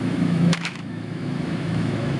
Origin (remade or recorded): remade